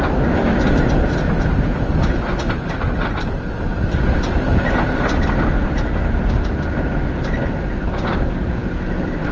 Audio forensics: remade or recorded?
recorded